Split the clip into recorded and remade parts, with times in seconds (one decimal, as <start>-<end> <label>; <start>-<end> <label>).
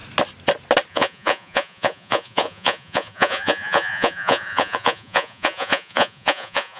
0.0-0.9 recorded; 0.9-6.8 remade